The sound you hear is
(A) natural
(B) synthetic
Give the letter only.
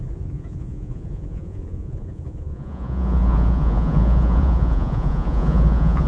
B